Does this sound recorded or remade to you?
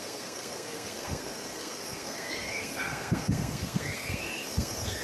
remade